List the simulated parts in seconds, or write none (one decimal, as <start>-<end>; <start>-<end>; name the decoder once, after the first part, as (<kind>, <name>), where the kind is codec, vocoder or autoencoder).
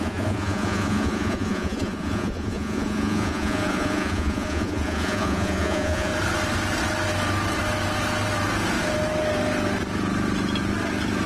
0.0-6.1 (vocoder, Vocos)